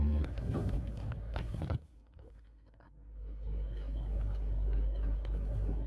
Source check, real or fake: fake